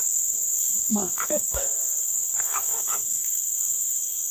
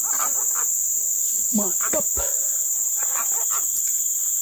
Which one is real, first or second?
second